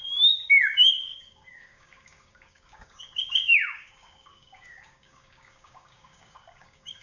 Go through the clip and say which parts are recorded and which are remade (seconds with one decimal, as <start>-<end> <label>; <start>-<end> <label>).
0.0-7.0 remade